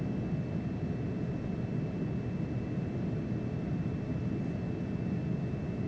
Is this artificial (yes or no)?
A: no